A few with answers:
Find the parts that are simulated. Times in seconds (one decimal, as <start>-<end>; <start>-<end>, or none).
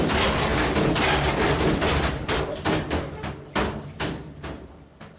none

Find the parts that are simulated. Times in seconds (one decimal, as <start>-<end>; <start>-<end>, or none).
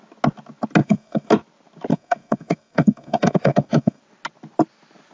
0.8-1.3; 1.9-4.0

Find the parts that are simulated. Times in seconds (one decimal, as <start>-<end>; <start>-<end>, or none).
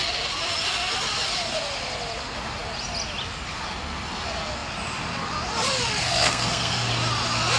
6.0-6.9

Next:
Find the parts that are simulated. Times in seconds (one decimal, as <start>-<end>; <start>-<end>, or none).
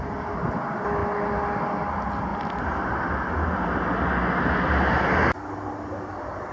none